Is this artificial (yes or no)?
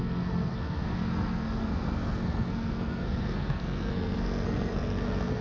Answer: yes